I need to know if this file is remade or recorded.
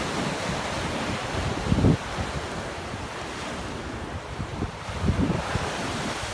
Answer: recorded